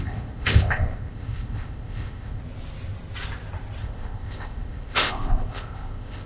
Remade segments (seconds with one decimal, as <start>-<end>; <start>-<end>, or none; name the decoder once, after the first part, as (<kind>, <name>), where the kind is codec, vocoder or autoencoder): 0.0-2.4 (codec, ZipCodec); 3.8-6.3